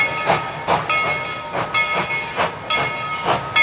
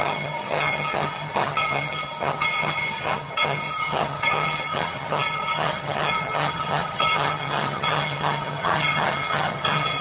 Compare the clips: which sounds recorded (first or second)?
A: first